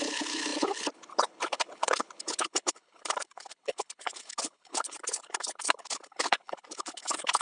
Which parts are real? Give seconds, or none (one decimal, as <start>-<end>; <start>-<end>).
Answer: none